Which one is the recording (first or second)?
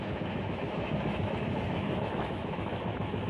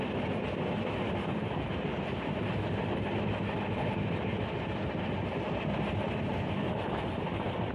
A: second